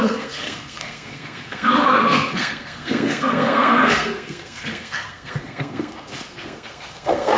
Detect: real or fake fake